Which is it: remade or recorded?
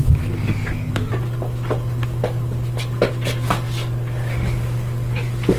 remade